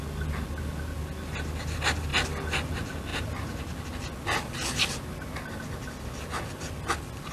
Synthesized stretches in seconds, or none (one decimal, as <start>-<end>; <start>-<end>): none